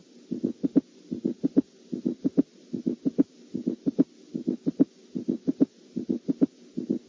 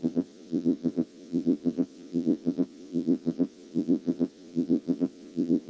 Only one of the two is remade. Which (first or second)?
second